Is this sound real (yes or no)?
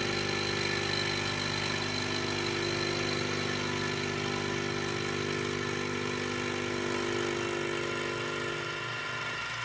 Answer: yes